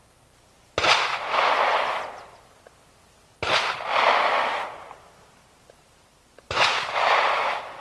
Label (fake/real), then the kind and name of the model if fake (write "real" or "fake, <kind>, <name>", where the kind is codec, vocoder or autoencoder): real